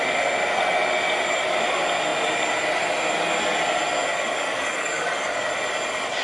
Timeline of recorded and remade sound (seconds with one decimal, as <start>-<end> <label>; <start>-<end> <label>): 0.0-4.1 recorded; 4.1-5.5 remade; 5.5-6.2 recorded